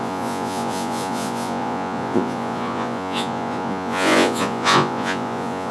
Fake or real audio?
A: fake